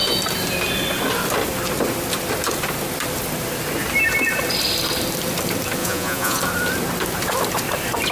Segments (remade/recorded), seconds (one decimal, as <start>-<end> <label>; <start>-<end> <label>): 0.0-5.8 recorded; 5.8-6.4 remade; 6.4-8.1 recorded